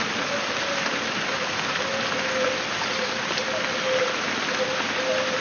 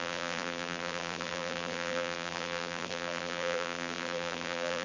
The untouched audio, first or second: first